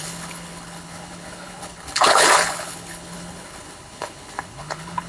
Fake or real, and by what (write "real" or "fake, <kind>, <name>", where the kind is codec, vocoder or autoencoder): fake, codec, HILCodec